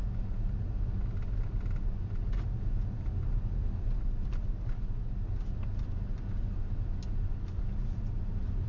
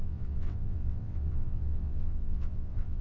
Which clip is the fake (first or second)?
second